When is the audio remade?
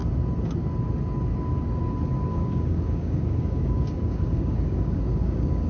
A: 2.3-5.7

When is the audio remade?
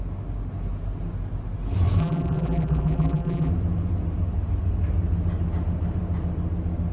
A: 2.0-3.5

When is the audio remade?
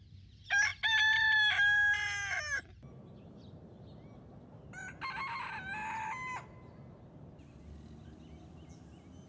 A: none